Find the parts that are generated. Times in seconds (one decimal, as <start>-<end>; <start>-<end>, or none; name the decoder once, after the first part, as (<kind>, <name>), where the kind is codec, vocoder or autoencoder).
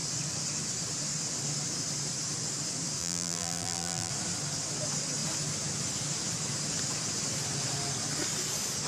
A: 3.0-4.1 (vocoder, BigVGAN v2)